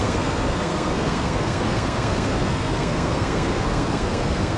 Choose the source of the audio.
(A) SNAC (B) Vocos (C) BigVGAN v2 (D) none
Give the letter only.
A